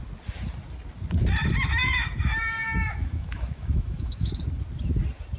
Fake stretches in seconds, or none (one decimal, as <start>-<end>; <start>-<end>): 1.8-4.3